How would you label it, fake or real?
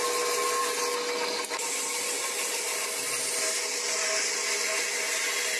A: real